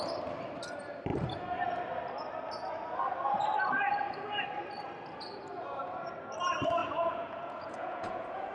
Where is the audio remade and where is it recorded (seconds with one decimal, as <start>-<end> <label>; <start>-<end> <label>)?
0.0-6.8 recorded; 6.8-8.5 remade